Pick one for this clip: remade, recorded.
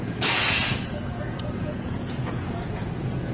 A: remade